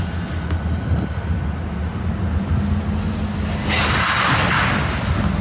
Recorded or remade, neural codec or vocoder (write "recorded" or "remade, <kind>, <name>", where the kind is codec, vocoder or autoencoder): recorded